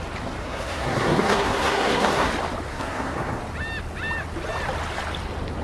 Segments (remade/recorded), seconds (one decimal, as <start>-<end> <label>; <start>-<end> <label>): 0.0-0.4 recorded; 0.4-2.3 remade; 2.3-2.7 recorded; 2.7-3.4 remade; 3.4-5.6 recorded